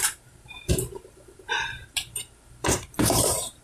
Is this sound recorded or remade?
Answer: remade